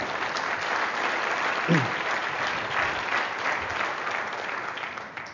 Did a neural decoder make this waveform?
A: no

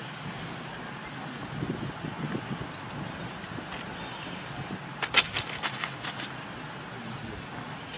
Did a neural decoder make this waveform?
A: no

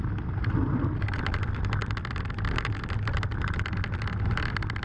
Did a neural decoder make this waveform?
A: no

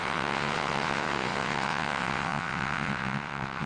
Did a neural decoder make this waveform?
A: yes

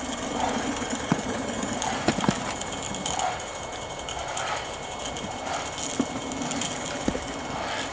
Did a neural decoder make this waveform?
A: no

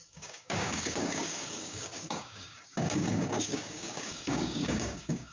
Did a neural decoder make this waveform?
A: yes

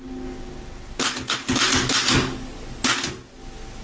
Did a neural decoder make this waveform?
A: no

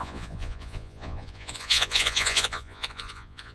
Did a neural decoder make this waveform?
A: yes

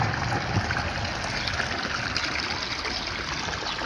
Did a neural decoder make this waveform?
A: no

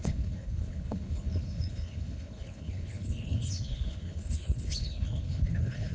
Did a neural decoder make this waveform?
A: yes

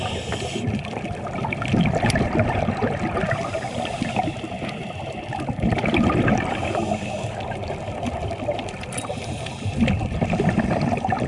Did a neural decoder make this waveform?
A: yes